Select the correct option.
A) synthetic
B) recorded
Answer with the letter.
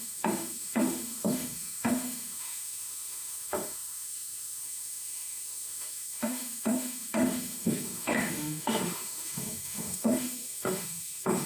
A